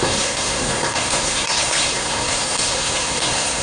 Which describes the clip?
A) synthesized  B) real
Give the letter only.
A